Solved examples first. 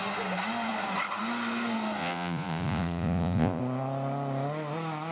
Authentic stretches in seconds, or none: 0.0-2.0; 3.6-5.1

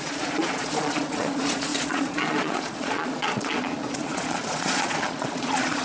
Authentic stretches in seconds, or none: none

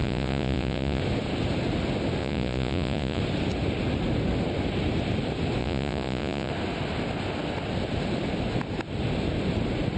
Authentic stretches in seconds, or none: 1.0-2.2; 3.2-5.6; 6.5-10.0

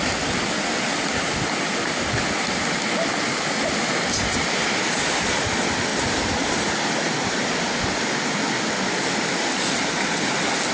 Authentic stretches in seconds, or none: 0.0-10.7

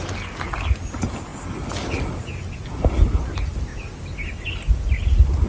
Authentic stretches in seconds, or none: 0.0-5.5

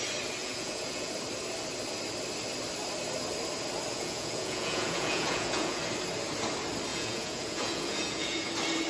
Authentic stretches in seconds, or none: 0.0-0.4; 1.1-3.9; 5.8-6.9; 8.5-8.9

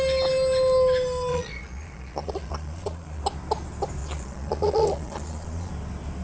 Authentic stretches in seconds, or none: 0.0-1.3; 3.2-4.0; 5.7-6.2

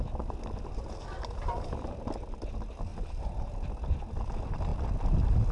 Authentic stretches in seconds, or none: 0.0-5.5